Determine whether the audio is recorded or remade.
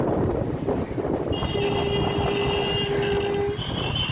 recorded